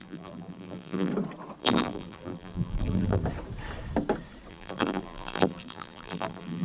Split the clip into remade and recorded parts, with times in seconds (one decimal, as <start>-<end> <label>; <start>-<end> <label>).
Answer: 0.0-1.1 remade; 1.1-1.6 recorded; 1.6-3.2 remade; 3.2-4.5 recorded; 4.5-6.6 remade